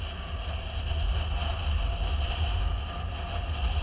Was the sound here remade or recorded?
recorded